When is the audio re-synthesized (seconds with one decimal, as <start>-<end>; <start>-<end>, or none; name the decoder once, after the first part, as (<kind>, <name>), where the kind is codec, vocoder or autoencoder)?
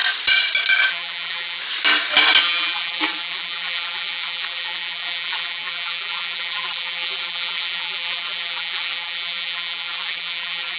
0.9-1.6 (vocoder, BigVGAN v2); 2.4-10.8